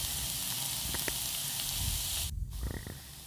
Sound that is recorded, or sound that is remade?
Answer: recorded